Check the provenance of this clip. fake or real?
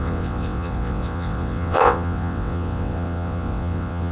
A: fake